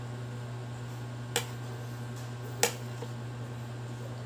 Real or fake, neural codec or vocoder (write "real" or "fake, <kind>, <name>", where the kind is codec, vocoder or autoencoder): real